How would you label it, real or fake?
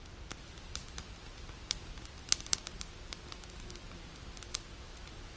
real